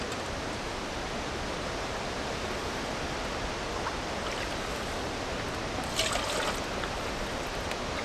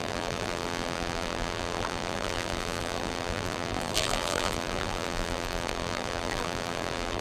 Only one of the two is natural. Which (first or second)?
first